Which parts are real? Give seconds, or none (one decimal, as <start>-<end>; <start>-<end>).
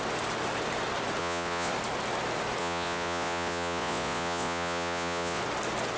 0.0-1.2; 1.7-2.6; 5.4-6.0